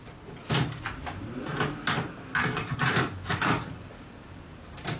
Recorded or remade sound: remade